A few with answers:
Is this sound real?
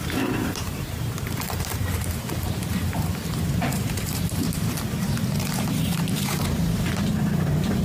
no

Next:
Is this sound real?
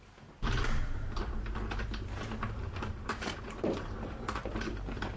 no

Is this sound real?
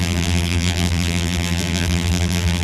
no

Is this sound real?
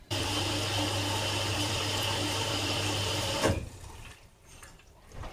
no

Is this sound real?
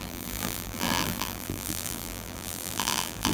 no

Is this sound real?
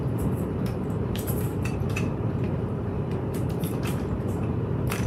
no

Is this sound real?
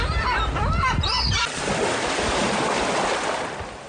yes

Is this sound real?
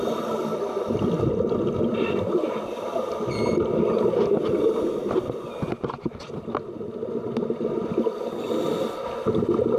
yes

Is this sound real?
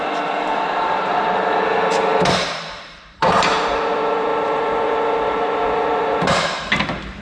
no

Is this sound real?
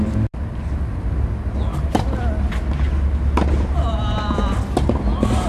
yes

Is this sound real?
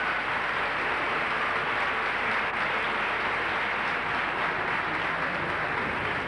yes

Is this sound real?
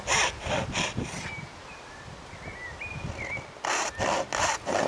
yes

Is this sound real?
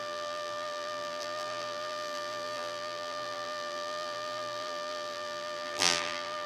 no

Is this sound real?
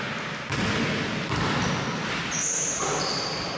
yes